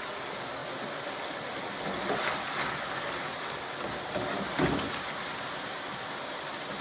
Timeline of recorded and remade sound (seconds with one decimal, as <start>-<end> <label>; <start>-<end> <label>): 0.0-6.8 recorded